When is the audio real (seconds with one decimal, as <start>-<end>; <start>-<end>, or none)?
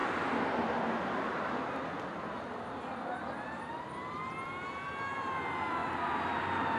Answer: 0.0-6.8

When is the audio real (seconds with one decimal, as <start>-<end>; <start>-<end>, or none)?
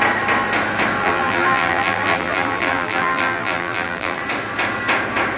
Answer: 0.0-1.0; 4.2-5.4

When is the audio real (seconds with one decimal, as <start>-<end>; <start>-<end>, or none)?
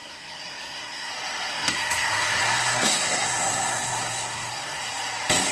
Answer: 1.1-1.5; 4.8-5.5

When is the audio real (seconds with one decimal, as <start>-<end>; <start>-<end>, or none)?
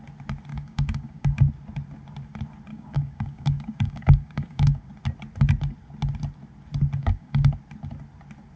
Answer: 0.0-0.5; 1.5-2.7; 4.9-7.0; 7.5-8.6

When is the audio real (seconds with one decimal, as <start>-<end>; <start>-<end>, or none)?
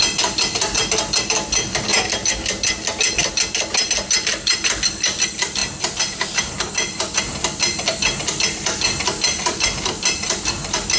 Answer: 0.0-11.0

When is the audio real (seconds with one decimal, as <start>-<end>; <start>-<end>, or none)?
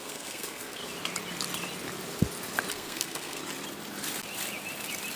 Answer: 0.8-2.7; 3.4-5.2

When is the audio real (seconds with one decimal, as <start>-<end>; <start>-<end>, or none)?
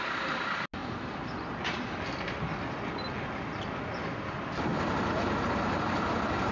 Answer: 0.0-4.7; 5.3-6.5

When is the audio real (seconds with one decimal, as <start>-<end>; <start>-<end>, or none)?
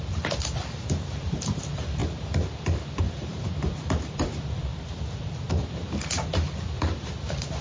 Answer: 2.0-3.0; 4.7-5.7